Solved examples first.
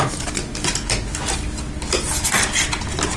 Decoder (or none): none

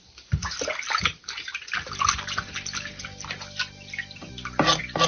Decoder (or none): none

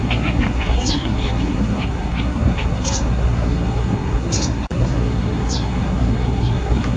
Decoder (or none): codec, SNAC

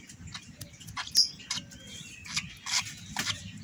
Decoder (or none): none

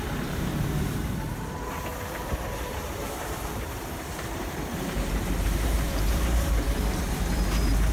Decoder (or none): vocoder, BigVGAN v2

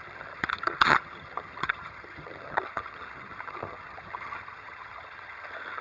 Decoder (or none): vocoder, HiFi-GAN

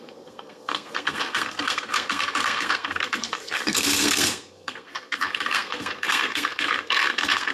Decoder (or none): codec, SNAC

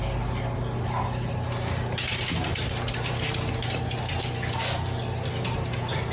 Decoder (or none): none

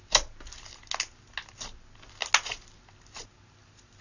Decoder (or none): none